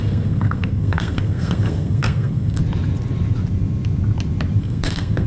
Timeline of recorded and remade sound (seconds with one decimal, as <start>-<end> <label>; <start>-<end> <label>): 0.0-2.6 remade; 2.6-4.6 recorded; 4.6-5.3 remade